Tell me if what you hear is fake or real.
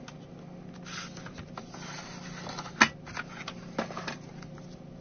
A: real